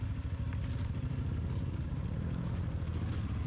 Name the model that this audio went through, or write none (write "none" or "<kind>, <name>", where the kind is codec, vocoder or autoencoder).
none